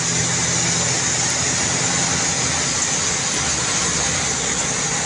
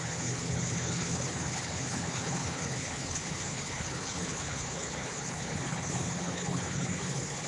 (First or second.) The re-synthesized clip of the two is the second